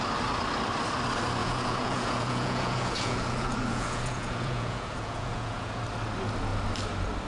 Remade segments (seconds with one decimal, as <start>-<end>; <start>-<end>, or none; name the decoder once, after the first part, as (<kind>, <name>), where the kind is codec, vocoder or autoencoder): 1.4-5.8 (vocoder, Vocos)